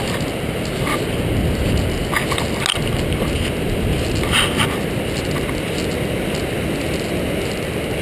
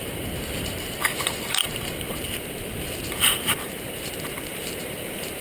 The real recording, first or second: first